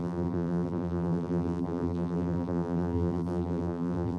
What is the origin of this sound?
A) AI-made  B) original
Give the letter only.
A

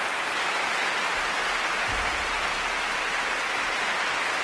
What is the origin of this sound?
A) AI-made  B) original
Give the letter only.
B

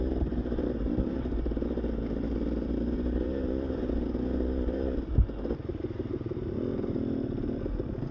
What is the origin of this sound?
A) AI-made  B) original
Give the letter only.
A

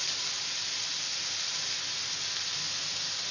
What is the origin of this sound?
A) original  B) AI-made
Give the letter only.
A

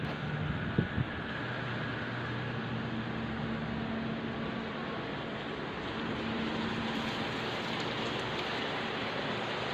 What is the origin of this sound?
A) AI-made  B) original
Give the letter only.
B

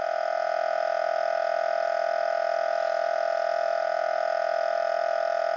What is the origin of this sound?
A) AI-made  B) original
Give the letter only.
A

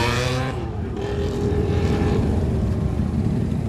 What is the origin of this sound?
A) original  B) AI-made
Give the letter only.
B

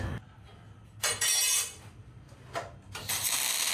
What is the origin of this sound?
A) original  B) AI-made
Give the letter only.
A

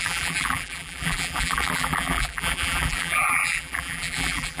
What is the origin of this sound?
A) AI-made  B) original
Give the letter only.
A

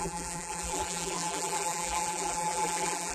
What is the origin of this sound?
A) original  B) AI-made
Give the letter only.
B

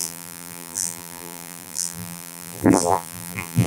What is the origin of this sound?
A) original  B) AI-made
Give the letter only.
B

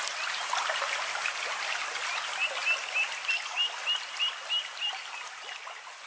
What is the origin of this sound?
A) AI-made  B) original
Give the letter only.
B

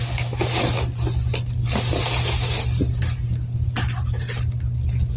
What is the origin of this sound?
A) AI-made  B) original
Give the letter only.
B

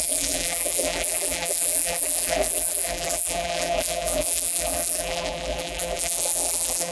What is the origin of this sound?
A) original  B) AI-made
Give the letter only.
B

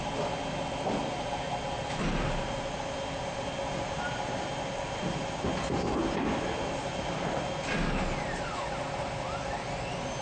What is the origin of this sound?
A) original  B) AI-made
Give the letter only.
A